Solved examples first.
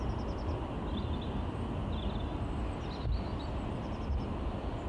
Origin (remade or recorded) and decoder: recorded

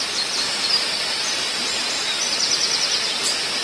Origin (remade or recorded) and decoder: recorded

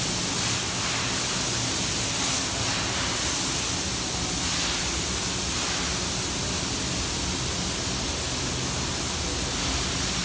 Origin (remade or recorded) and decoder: recorded